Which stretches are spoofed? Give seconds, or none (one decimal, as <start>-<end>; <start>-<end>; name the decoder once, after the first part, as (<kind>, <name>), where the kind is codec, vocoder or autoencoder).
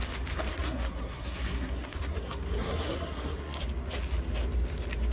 0.5-3.6 (codec, SNAC)